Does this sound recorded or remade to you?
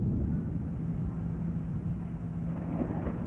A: recorded